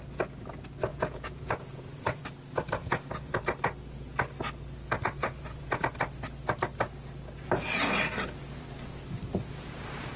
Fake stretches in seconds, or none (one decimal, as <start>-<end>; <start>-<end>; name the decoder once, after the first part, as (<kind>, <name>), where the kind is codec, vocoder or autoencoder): 0.9-2.2 (vocoder, Vocos); 2.8-3.3; 5.2-5.8